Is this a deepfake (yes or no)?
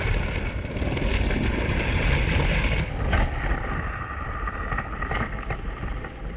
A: no